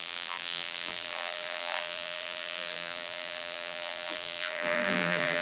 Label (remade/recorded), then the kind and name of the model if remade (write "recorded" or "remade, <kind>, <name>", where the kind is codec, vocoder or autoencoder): remade, vocoder, BigVGAN v2